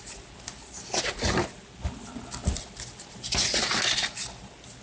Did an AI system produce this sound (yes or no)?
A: no